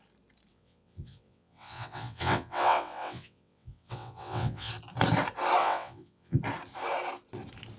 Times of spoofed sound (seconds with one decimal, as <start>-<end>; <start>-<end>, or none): 0.5-4.7; 5.6-6.4